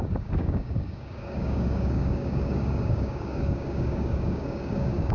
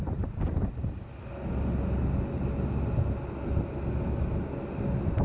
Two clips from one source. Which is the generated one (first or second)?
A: first